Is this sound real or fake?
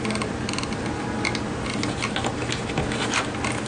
real